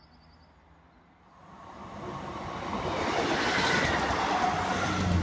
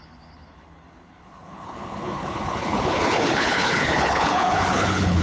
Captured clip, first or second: first